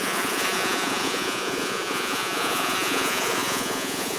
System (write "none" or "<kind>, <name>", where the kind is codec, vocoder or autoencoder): vocoder, Vocos